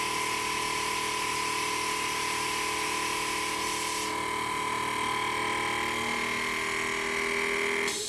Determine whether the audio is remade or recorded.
recorded